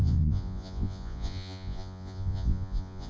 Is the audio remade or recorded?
remade